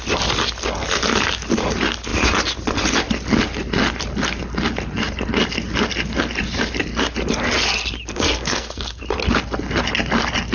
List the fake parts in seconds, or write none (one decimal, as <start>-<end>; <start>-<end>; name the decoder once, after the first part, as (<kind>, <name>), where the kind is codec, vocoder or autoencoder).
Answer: 8.1-9.0 (codec, SNAC)